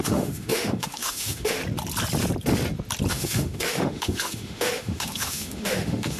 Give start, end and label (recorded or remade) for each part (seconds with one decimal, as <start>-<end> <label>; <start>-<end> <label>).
0.0-1.6 remade; 1.6-3.1 recorded; 3.1-6.2 remade